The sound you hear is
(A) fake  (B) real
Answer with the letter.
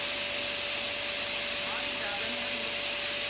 B